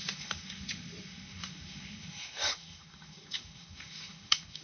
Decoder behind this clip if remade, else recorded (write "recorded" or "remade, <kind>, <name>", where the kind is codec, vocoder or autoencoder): remade, autoencoder, DAC-VAE